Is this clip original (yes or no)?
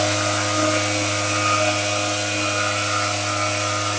yes